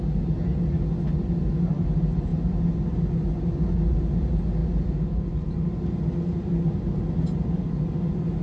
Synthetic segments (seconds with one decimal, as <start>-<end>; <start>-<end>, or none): none